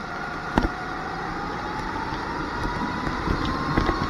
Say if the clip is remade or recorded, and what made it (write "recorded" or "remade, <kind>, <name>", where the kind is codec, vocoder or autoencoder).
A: recorded